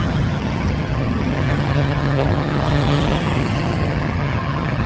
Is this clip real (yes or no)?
no